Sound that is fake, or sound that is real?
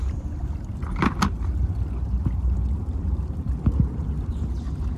real